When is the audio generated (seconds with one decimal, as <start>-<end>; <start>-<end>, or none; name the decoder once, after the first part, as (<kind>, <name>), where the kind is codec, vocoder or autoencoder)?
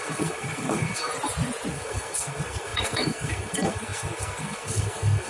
0.0-1.1 (codec, SNAC); 1.7-5.3